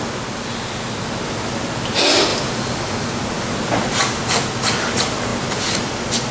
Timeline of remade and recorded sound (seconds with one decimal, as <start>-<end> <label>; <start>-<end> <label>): 0.0-6.3 recorded